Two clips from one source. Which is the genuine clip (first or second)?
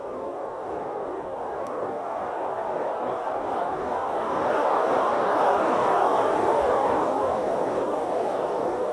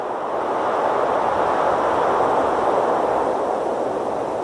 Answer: second